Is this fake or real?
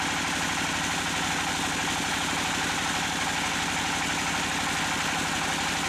real